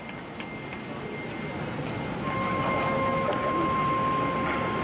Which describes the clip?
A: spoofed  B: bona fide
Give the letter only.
B